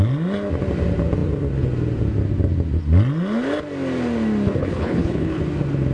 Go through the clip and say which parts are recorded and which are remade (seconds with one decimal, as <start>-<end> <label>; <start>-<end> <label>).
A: 0.0-4.6 recorded; 4.6-5.4 remade; 5.4-5.9 recorded